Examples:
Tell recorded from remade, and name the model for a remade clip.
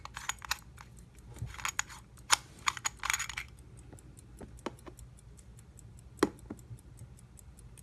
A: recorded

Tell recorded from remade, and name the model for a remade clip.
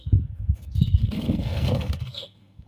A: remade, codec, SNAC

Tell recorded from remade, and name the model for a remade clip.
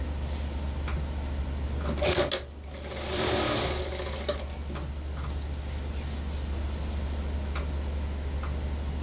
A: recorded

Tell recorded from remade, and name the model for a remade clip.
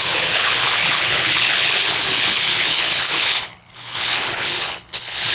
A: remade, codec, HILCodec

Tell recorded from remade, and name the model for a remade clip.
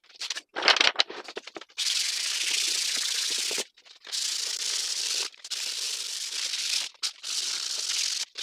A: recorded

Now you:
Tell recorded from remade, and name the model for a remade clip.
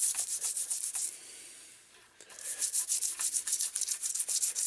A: remade, vocoder, BigVGAN v2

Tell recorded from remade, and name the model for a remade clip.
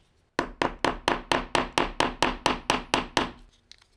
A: recorded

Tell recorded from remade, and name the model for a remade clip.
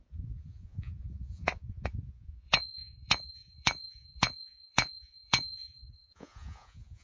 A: remade, vocoder, Vocos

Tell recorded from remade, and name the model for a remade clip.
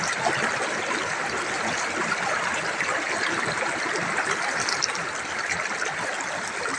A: recorded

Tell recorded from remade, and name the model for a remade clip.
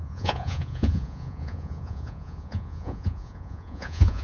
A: remade, vocoder, Vocos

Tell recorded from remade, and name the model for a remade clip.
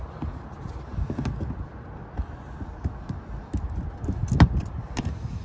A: recorded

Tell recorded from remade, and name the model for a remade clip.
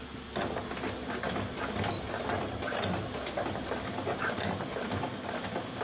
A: recorded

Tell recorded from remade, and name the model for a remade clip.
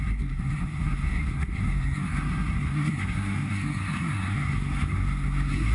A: remade, codec, SNAC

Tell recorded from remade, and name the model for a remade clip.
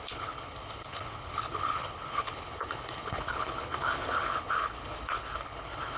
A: remade, codec, HILCodec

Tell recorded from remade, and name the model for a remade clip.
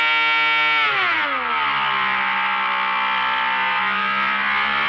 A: recorded